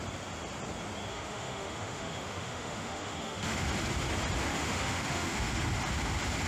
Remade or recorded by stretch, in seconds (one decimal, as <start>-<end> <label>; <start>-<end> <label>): 0.0-1.1 recorded; 1.1-3.7 remade; 3.7-4.5 recorded; 4.5-5.6 remade; 5.6-6.5 recorded